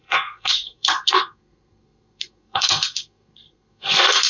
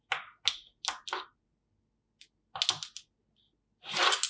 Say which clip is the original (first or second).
second